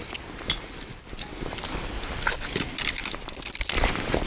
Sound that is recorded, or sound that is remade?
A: recorded